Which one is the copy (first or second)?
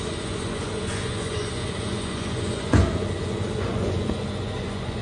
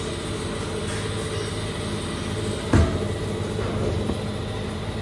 first